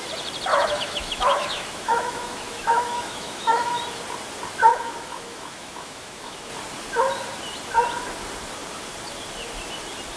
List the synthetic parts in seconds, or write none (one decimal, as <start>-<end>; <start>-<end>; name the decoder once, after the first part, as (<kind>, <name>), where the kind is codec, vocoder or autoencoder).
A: 0.5-3.8 (autoencoder, DAC-VAE); 4.7-6.5